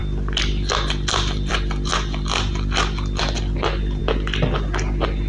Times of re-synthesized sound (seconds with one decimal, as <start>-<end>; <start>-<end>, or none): none